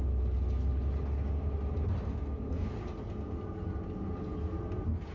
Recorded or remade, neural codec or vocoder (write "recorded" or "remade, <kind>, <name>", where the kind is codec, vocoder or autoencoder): recorded